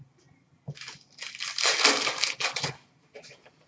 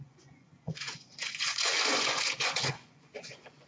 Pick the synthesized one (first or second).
second